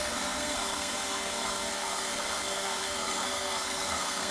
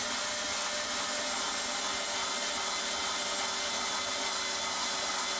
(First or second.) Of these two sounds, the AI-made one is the first